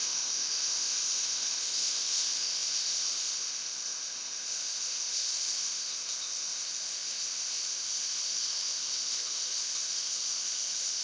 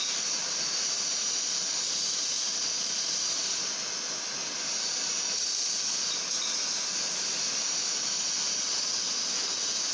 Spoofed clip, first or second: first